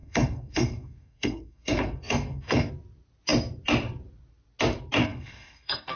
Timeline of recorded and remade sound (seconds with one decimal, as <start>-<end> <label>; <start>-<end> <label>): 0.0-2.7 remade; 2.7-5.0 recorded; 5.0-6.0 remade